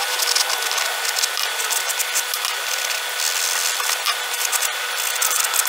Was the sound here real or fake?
real